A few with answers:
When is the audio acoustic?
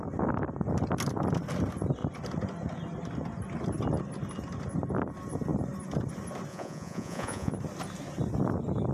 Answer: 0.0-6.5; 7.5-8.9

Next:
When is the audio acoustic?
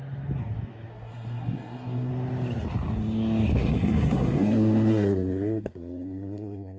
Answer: 0.0-0.9; 2.1-3.5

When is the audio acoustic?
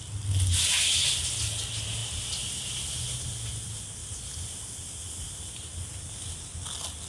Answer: 0.0-7.1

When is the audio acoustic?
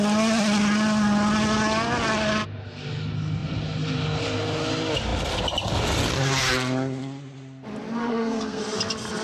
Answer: 0.0-8.0; 8.6-9.2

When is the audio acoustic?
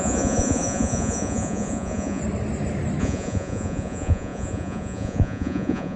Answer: 2.2-3.0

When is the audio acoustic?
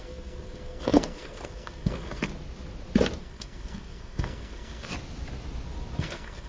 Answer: 2.3-3.2; 4.9-6.0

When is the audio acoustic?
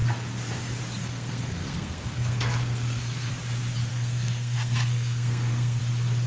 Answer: 0.0-1.0; 3.3-3.9; 5.8-6.3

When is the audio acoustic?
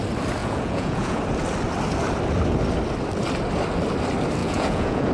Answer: 0.0-0.4; 1.2-4.4